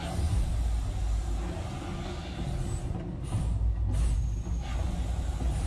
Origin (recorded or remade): recorded